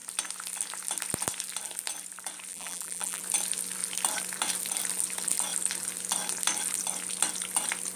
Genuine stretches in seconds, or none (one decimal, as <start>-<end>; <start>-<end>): 0.0-2.5; 3.2-8.0